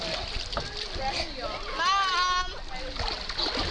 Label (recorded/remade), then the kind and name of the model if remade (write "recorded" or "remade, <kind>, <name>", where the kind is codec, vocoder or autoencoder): recorded